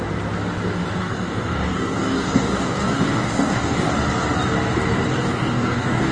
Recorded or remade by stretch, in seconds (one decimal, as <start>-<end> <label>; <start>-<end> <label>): 0.0-1.0 recorded; 1.0-3.9 remade; 3.9-5.1 recorded; 5.1-6.1 remade